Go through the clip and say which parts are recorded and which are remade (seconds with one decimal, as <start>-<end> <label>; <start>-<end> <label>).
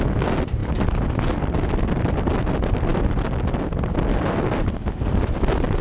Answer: 0.0-5.8 recorded